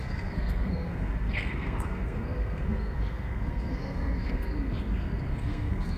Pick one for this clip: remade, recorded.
remade